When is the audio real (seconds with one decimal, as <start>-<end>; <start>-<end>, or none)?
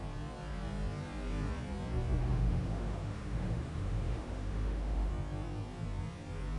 0.0-2.2; 5.1-6.6